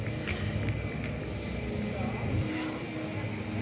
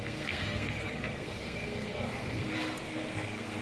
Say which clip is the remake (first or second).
second